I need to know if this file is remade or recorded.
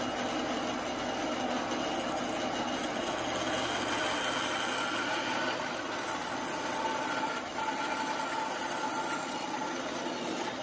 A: recorded